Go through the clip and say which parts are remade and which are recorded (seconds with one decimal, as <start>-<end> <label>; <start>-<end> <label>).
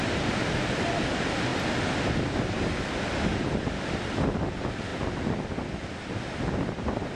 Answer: 0.0-7.2 recorded